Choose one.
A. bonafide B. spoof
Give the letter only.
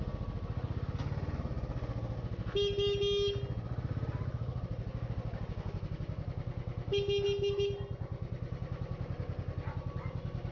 A